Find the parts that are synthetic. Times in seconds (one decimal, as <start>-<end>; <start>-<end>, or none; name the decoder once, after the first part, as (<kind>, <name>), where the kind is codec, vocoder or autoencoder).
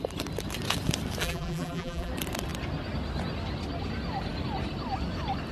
1.2-2.1 (vocoder, BigVGAN v2)